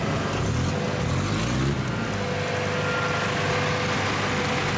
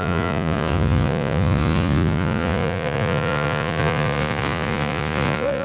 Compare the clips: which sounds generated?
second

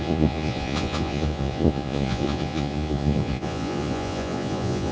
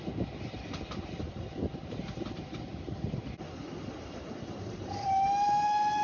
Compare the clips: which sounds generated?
first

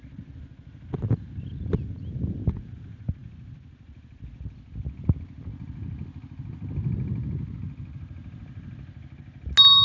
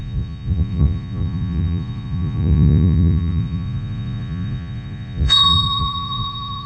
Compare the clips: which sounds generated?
second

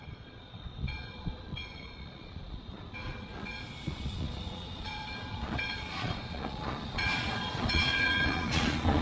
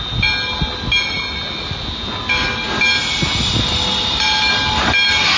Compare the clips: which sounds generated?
first